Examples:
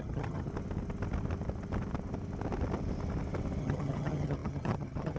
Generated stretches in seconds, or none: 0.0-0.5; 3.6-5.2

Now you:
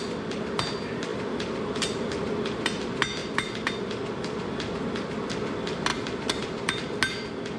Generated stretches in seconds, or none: 1.1-2.4; 3.2-4.1; 5.9-7.0

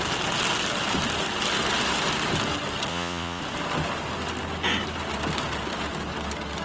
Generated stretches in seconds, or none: 2.9-3.4

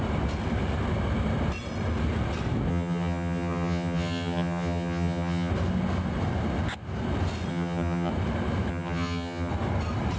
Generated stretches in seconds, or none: 2.7-5.5; 7.5-8.1; 8.7-9.5

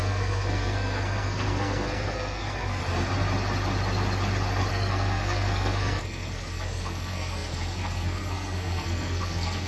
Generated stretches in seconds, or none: 0.0-2.8; 4.7-9.7